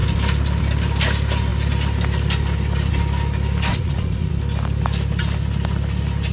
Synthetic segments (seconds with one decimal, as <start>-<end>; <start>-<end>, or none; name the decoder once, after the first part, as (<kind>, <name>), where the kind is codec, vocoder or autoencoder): 3.7-4.3 (vocoder, Vocos)